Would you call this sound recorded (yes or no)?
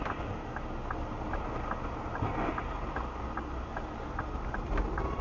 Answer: yes